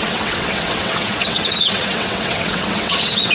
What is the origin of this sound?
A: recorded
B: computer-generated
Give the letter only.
B